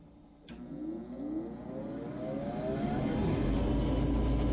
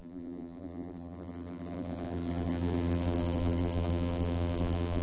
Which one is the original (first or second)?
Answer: first